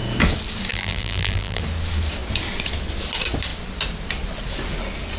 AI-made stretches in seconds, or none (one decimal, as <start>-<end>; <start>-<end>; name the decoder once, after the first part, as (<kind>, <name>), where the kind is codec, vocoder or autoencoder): 0.7-1.6 (vocoder, BigVGAN v2)